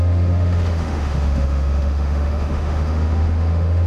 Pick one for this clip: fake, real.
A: fake